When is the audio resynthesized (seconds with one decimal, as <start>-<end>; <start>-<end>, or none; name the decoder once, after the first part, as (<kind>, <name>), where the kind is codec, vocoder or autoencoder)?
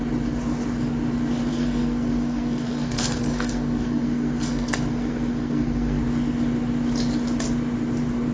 1.5-6.0 (codec, SNAC)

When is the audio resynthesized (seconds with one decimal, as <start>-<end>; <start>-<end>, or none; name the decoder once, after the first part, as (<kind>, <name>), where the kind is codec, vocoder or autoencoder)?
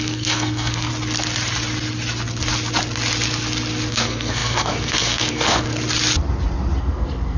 0.0-0.9 (codec, SNAC); 3.9-5.7; 6.8-7.4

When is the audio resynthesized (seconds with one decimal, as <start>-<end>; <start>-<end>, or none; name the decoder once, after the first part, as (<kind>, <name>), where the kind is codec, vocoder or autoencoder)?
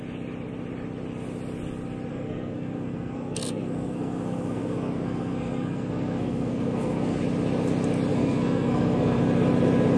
2.1-7.2 (codec, SNAC); 8.1-9.2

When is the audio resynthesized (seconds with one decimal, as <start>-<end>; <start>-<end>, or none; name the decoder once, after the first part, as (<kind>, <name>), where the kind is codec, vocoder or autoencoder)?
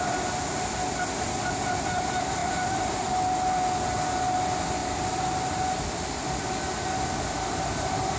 none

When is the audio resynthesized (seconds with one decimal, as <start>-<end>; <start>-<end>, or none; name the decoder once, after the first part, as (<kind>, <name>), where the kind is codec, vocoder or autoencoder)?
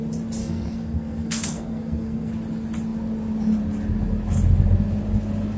0.4-2.3 (codec, SNAC)